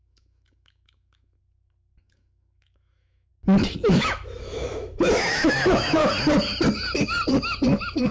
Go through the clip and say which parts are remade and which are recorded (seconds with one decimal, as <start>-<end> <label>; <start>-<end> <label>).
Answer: 0.0-3.3 remade; 3.3-3.8 recorded; 3.8-6.0 remade; 6.0-8.1 recorded